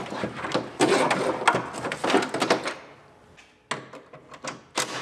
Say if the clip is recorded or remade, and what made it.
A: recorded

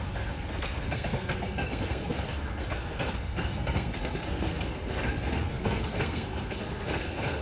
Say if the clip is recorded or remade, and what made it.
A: remade, codec, SNAC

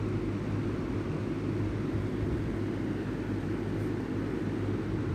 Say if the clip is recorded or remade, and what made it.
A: recorded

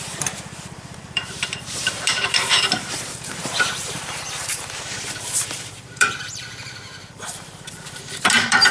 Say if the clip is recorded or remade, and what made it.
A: remade, vocoder, BigVGAN v2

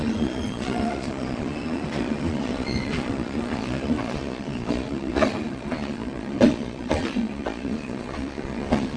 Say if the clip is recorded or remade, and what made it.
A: remade, vocoder, Vocos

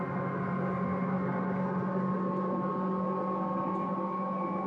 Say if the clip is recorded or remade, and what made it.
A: recorded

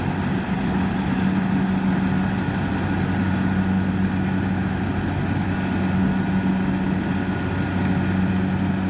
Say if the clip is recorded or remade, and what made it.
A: recorded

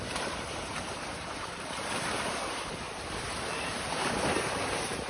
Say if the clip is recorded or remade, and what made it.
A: remade, vocoder, BigVGAN v2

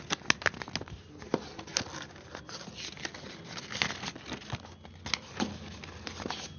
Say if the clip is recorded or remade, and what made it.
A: recorded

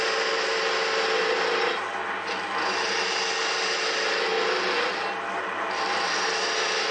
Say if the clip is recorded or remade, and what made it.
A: recorded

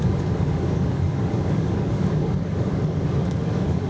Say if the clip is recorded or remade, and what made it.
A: remade, codec, DAC